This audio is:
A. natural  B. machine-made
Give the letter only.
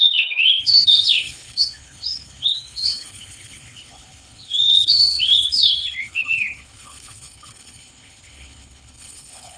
B